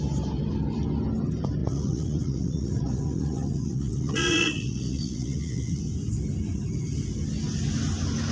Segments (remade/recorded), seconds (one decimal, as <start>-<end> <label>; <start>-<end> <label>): 0.0-1.6 recorded; 1.6-5.8 remade; 5.8-8.3 recorded